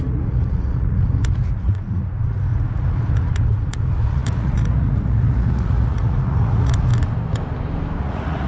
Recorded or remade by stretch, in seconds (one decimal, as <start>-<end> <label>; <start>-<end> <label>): 0.0-6.9 remade; 6.9-8.0 recorded; 8.0-8.5 remade